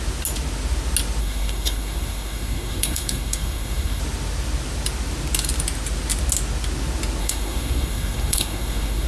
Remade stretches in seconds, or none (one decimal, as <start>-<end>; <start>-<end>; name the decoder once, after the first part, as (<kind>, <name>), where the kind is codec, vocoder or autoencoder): 1.2-4.0 (codec, SNAC); 7.2-9.1